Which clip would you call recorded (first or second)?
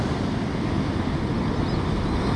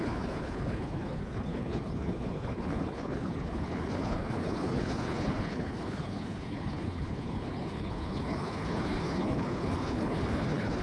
first